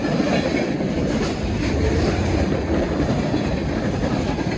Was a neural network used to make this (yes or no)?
no